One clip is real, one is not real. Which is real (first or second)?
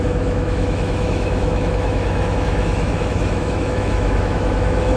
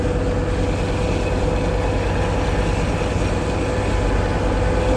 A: second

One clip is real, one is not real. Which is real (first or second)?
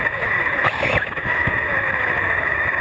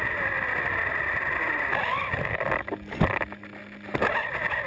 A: second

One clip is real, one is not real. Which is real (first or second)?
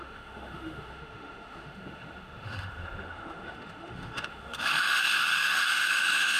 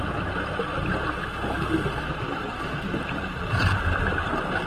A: second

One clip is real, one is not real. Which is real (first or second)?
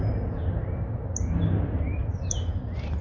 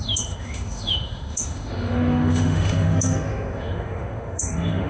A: first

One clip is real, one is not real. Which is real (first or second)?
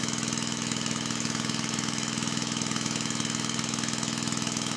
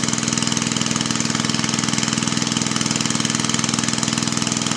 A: second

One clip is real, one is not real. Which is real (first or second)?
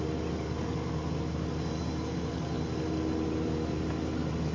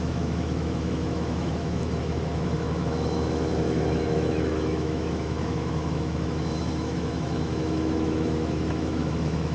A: first